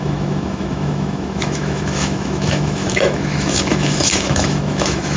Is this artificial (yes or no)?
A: yes